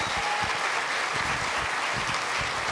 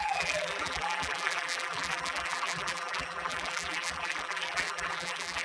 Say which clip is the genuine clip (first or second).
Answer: first